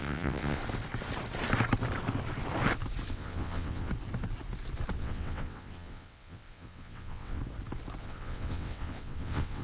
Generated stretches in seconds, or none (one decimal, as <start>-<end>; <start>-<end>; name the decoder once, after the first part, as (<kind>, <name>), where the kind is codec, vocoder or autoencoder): 0.0-0.6 (vocoder, WaveNeXt); 3.1-3.9; 5.0-7.4; 8.0-9.6